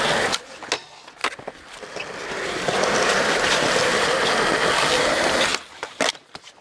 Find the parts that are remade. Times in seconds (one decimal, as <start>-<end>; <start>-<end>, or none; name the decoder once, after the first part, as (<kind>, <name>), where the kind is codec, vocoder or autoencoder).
1.2-4.0 (vocoder, BigVGAN v2)